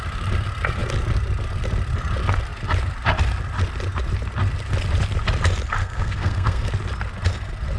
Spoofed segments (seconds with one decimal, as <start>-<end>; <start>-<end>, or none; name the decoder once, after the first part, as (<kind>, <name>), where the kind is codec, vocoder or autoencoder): 5.8-6.7 (codec, SNAC)